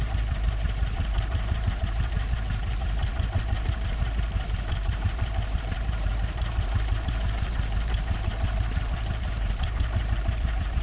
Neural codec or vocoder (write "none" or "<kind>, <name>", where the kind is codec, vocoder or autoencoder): vocoder, BigVGAN v2